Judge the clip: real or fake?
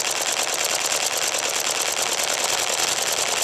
real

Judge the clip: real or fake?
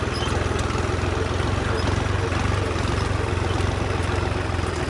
real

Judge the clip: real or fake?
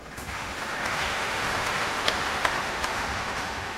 fake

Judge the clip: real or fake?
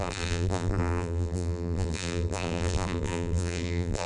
fake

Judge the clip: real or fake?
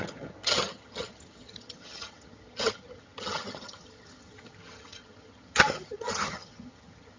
fake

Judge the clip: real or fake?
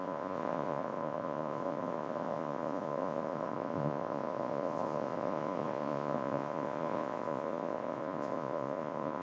fake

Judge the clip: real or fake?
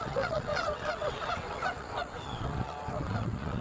fake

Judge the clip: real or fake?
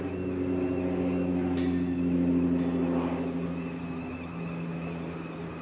real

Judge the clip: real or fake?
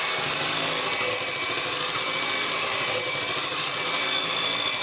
real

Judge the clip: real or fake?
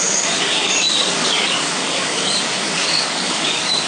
fake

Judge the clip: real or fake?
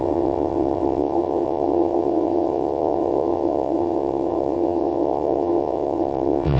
fake